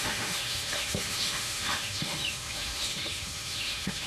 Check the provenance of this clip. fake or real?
fake